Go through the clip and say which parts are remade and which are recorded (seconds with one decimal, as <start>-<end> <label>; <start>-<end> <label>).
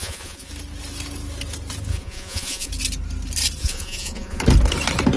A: 0.0-0.5 remade; 0.5-1.9 recorded; 1.9-2.7 remade; 2.7-3.6 recorded; 3.6-4.4 remade; 4.4-5.2 recorded